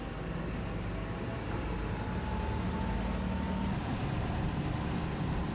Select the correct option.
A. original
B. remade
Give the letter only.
A